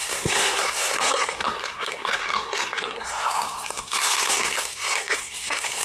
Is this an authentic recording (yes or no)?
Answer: no